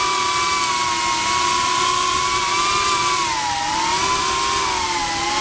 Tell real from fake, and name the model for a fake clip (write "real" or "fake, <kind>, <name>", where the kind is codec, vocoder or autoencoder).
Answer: real